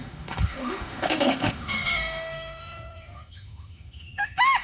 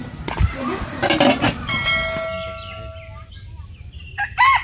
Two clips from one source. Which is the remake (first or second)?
first